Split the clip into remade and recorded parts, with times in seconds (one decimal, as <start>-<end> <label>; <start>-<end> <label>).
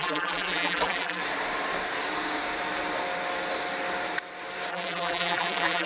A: 0.0-1.2 remade; 1.2-4.7 recorded; 4.7-5.9 remade